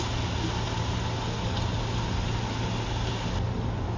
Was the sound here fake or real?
real